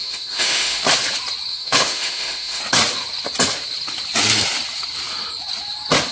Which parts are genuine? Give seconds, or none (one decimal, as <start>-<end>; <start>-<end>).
0.8-1.5; 2.6-6.1

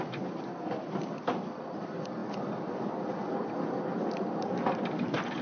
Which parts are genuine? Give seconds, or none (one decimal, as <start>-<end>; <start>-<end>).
0.0-5.4